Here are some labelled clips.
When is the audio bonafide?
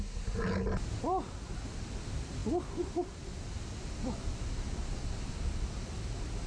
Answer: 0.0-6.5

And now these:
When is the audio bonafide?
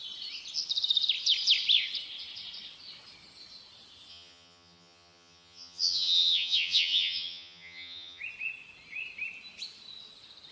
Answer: 0.0-4.1; 8.2-10.5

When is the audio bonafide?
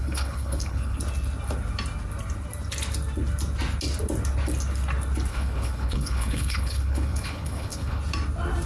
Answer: 1.0-5.3; 8.0-8.7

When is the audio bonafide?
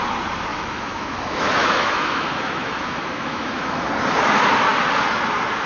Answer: 0.0-0.5; 3.9-5.7